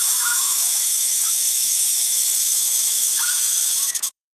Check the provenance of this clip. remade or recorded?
remade